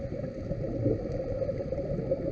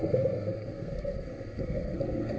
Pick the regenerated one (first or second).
second